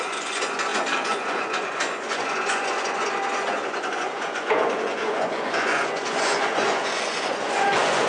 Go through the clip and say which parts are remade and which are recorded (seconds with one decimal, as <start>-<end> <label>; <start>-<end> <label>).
0.0-8.1 remade